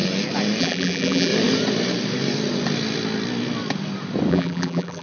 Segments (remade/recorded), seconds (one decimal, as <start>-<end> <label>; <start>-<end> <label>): 0.0-0.6 recorded; 0.6-1.3 remade; 1.3-4.3 recorded; 4.3-5.0 remade